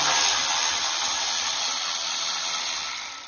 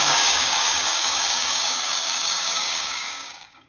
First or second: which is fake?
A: second